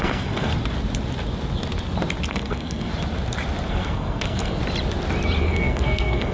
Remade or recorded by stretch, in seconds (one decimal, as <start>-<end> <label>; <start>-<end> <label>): 0.0-0.5 remade; 0.5-2.3 recorded; 2.3-2.9 remade; 2.9-3.7 recorded; 3.7-4.6 remade; 4.6-5.4 recorded; 5.4-6.3 remade